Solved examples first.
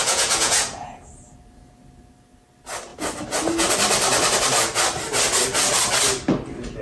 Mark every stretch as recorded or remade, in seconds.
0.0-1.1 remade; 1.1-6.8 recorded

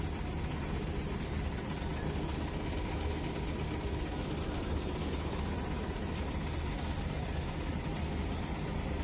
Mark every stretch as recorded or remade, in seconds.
0.0-9.0 recorded